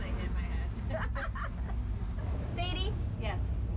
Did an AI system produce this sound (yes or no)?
no